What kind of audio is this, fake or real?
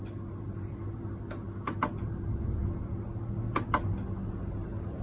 real